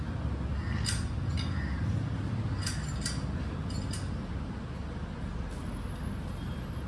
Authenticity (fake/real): real